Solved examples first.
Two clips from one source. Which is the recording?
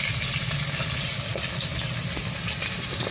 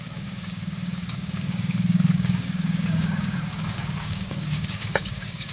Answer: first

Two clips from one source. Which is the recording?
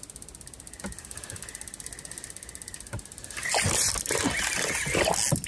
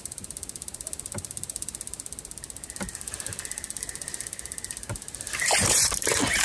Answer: first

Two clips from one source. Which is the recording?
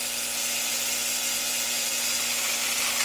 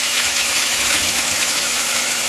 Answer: first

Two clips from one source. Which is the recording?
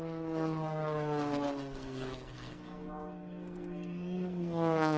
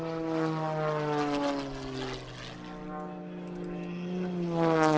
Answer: second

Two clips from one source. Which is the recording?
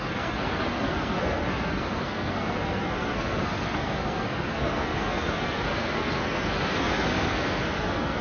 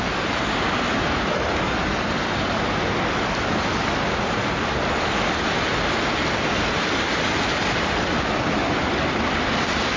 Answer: second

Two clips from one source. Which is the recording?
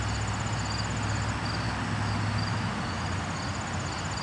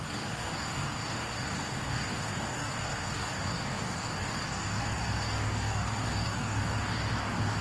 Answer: first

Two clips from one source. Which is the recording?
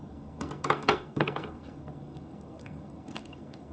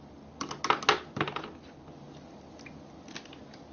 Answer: second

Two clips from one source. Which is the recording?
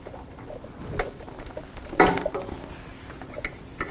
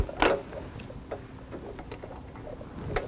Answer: second